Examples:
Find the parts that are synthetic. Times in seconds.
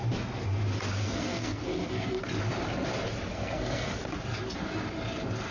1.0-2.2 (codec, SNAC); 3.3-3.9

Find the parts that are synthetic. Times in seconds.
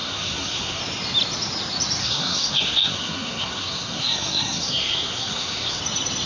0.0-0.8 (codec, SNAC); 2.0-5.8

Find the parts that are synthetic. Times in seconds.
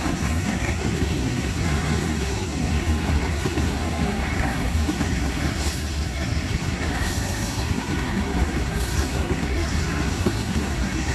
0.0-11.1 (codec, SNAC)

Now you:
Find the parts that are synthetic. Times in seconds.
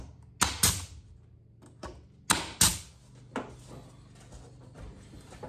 none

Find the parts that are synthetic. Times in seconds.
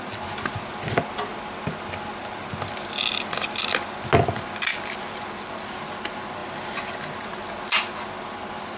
none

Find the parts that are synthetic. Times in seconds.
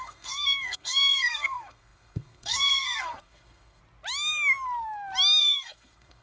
0.0-3.8 (codec, SNAC); 5.4-6.2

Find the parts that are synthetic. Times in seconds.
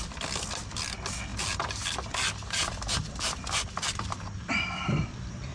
0.7-1.3 (vocoder, BigVGAN v2); 4.6-5.5